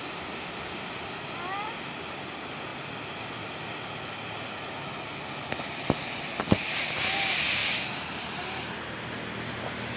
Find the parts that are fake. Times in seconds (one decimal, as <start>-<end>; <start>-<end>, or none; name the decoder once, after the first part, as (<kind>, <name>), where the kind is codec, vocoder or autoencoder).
none